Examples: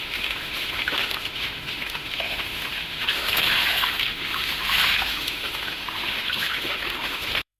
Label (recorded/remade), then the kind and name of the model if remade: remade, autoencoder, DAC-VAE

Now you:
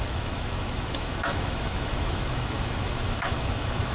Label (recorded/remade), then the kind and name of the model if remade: remade, autoencoder, DAC-VAE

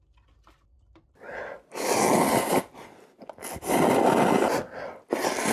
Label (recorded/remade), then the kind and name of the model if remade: recorded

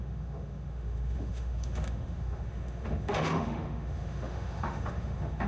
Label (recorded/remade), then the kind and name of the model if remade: remade, autoencoder, DAC-VAE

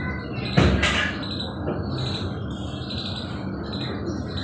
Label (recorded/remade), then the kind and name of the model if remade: recorded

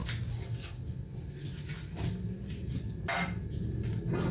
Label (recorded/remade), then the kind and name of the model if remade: recorded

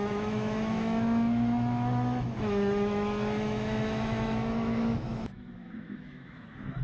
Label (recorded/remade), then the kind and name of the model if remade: remade, autoencoder, DAC-VAE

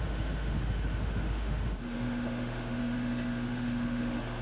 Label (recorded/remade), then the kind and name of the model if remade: remade, autoencoder, DAC-VAE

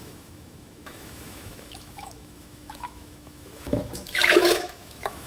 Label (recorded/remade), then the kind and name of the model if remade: remade, autoencoder, DAC-VAE